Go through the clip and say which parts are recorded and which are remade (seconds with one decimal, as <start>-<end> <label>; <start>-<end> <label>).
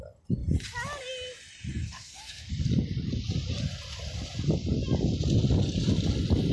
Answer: 0.0-1.7 recorded; 1.7-2.5 remade; 2.5-6.5 recorded